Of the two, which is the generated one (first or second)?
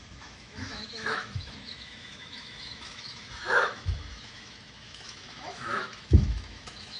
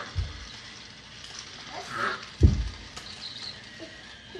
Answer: first